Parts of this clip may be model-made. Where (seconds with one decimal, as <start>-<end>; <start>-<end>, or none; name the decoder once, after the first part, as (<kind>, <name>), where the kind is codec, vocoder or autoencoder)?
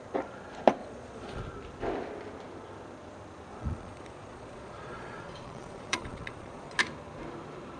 0.8-1.4 (vocoder, Vocos); 3.5-6.8